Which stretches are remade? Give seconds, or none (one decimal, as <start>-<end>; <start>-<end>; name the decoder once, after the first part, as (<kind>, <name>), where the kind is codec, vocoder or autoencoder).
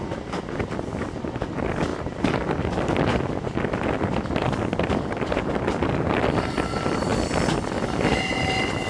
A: none